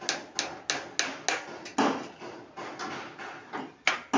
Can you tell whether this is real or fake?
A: real